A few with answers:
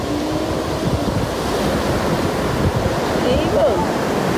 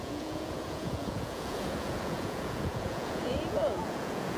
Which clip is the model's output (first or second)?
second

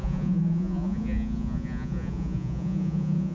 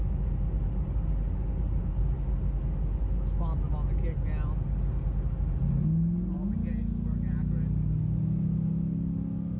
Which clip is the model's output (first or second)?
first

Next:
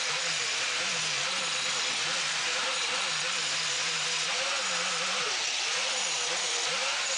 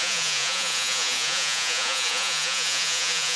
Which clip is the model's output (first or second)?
second